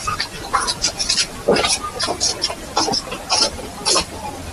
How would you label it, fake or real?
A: real